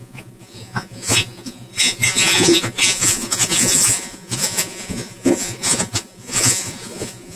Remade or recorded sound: remade